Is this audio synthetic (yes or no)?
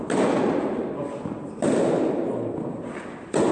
no